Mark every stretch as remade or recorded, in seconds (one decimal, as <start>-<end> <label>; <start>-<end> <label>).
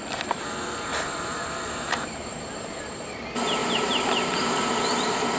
0.0-0.9 recorded; 0.9-3.1 remade; 3.1-3.6 recorded; 3.6-5.4 remade